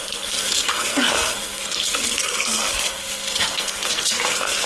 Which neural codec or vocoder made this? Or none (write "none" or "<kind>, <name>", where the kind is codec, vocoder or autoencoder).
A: codec, SNAC